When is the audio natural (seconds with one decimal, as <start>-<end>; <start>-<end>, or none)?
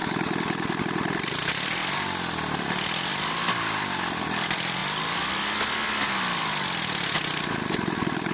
0.0-8.3